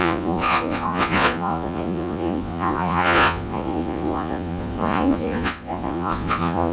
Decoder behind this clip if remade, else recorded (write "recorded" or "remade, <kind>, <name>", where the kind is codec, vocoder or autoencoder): remade, vocoder, Vocos